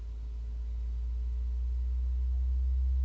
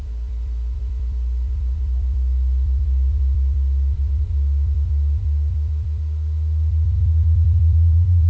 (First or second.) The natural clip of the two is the first